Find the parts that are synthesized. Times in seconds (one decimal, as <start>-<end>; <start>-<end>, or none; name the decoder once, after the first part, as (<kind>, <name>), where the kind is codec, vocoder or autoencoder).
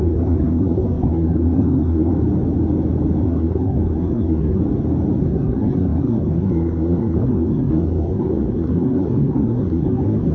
0.0-2.1 (codec, SNAC); 3.2-4.6; 5.2-10.3